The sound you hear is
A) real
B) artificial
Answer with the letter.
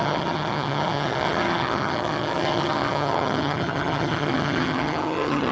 B